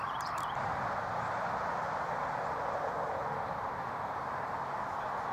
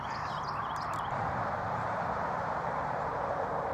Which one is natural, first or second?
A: first